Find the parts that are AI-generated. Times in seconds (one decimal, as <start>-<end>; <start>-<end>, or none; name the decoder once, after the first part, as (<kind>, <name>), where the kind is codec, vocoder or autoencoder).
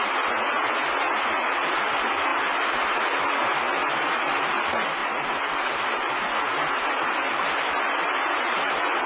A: none